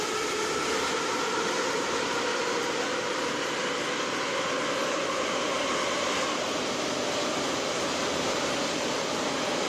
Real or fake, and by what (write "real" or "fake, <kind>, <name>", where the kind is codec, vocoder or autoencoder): real